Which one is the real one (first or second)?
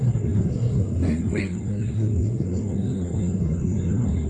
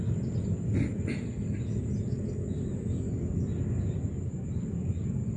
second